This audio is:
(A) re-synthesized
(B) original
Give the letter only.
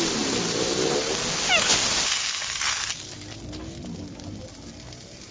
B